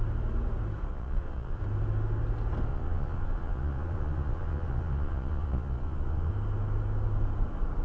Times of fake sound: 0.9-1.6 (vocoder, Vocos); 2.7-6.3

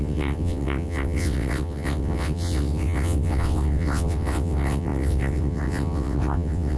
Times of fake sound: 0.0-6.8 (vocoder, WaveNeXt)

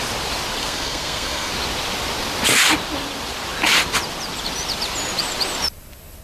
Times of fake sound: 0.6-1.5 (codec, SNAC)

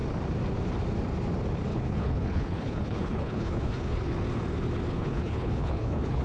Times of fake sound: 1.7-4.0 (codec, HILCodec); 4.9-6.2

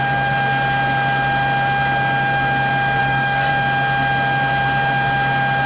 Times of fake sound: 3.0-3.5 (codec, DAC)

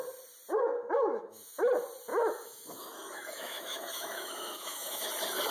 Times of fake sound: 0.8-1.7 (autoencoder, DAC-VAE); 2.1-5.1

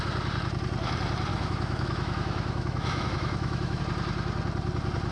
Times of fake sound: 1.3-3.8 (autoencoder, DAC-VAE)